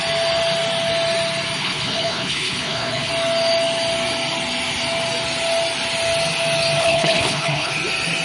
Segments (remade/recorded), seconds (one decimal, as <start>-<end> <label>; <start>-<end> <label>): 0.0-1.6 recorded; 1.6-3.1 remade; 3.1-6.8 recorded; 6.8-7.7 remade; 7.7-8.2 recorded